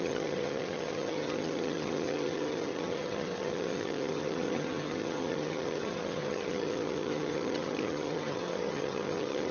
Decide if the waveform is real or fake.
fake